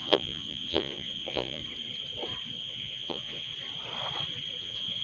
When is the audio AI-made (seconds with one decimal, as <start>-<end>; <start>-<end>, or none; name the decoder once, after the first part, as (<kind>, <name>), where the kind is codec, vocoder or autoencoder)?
0.0-1.6 (vocoder, Vocos); 2.6-3.5; 4.6-5.0

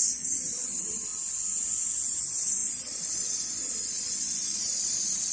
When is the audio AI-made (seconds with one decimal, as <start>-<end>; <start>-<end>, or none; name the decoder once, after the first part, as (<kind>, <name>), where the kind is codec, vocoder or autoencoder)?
0.0-1.1 (vocoder, Vocos); 2.2-5.3